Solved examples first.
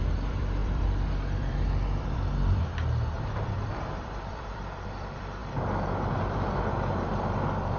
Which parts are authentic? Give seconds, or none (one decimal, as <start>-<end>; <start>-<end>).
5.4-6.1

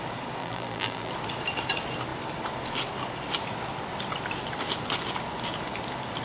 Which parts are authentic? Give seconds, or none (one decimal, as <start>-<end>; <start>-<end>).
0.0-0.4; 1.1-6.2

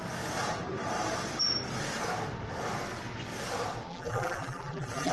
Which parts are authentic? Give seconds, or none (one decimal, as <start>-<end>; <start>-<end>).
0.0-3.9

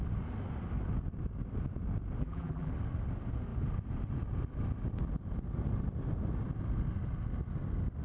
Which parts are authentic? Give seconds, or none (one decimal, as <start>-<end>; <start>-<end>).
0.0-2.2; 2.7-8.0

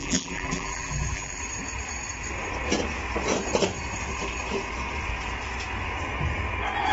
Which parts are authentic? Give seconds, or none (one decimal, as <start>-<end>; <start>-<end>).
1.4-6.9

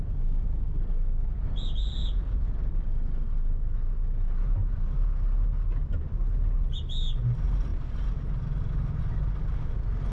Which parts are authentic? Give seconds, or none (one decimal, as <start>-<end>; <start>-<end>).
0.0-10.1